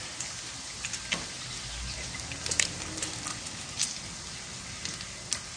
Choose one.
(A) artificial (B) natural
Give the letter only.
B